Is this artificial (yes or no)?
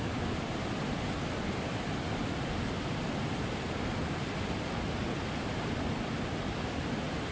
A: no